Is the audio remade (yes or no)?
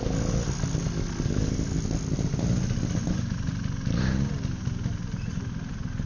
no